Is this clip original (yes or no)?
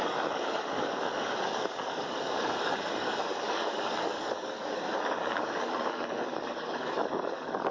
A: no